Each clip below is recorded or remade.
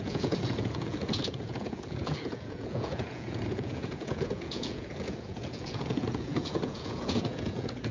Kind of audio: remade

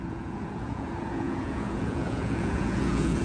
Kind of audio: remade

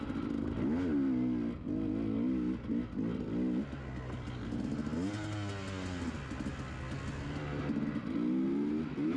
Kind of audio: recorded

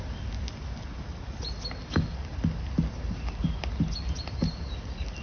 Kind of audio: recorded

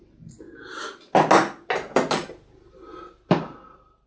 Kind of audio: recorded